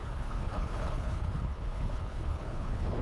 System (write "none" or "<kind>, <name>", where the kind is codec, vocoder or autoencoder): codec, HILCodec